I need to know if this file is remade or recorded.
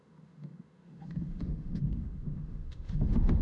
remade